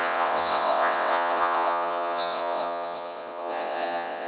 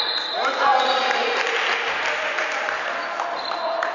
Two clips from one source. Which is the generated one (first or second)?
first